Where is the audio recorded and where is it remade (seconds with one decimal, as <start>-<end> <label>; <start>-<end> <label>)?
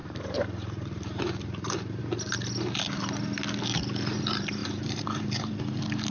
0.0-2.0 remade; 2.0-4.6 recorded; 4.6-5.6 remade; 5.6-6.1 recorded